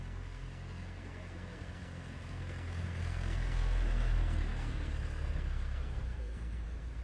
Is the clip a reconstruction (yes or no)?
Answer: yes